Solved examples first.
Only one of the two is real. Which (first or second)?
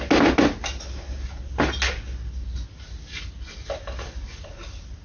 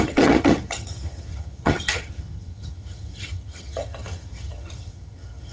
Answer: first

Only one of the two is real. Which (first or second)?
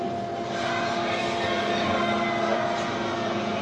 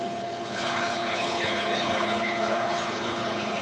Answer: first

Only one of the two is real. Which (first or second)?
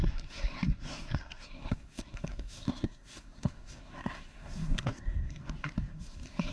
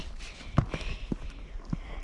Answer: second